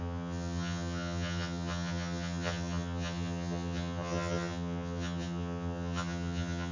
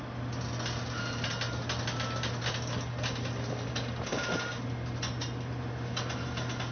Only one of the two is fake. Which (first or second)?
first